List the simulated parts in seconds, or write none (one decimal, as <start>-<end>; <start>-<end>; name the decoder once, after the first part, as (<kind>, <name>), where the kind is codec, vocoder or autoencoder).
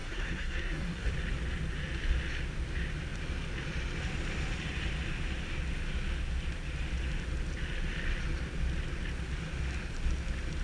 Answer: 0.0-1.1 (codec, SNAC)